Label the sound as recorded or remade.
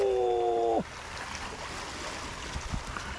recorded